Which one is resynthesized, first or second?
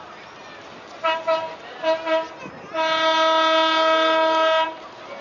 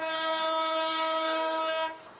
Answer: second